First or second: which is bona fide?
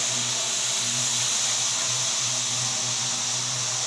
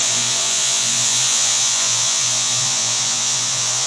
first